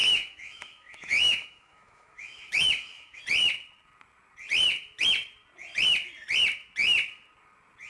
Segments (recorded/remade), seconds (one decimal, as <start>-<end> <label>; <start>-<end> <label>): 0.0-3.2 remade; 3.2-7.9 recorded